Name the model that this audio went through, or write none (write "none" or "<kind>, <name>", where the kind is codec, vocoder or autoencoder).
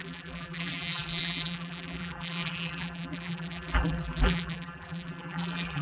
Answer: vocoder, BigVGAN v2